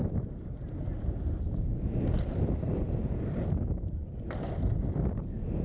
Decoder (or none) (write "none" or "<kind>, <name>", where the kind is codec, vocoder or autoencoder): none